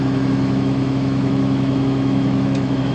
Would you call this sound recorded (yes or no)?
no